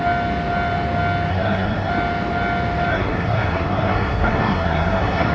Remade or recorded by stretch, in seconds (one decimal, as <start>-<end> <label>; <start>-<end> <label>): 0.0-1.3 recorded; 1.3-1.9 remade; 1.9-2.9 recorded; 2.9-5.3 remade